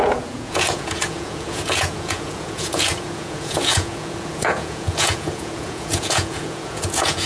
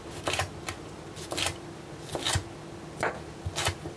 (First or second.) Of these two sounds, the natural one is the second